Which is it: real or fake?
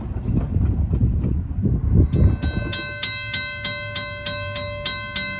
real